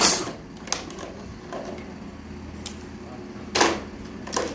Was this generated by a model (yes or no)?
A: no